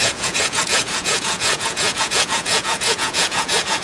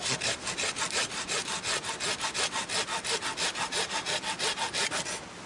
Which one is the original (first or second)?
second